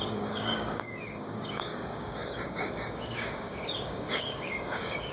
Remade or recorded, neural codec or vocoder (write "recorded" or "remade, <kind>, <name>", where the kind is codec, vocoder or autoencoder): remade, codec, DAC